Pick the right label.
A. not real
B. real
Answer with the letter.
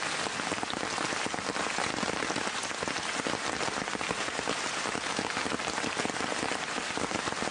B